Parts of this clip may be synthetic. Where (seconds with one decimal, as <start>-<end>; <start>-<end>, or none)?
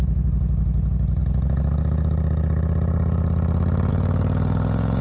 0.0-1.2; 3.9-5.0